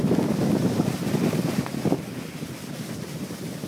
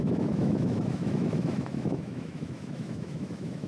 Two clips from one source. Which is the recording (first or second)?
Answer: first